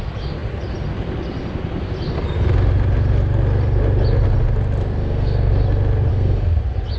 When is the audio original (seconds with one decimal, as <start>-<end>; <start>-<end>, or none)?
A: 0.0-5.0; 5.5-6.1; 6.6-7.0